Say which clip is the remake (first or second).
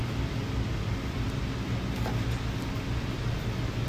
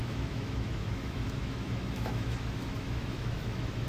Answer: second